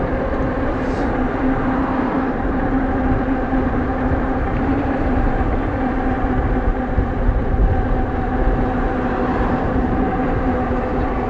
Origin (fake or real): fake